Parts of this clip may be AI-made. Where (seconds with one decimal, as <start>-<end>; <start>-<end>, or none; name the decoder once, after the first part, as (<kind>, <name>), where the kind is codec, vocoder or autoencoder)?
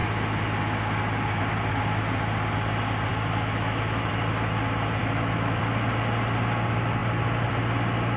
3.1-4.1 (autoencoder, DAC-VAE); 5.0-5.6